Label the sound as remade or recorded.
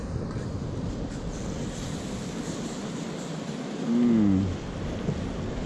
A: recorded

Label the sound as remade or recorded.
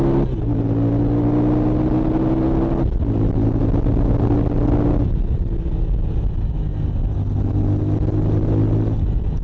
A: recorded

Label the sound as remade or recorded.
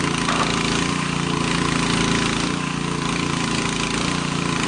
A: recorded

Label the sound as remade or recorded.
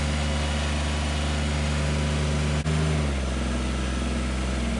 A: recorded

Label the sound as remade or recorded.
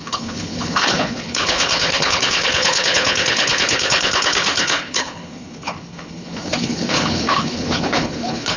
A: remade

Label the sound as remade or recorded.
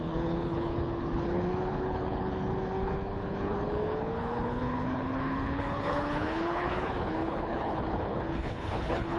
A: remade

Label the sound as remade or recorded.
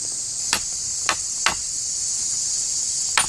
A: recorded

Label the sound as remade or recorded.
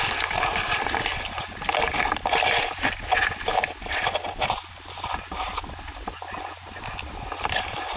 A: recorded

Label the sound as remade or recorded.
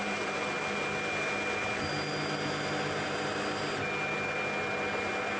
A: recorded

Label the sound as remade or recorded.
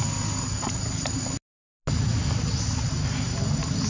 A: recorded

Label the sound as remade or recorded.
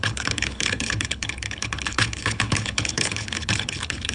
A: remade